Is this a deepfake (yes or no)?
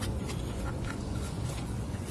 yes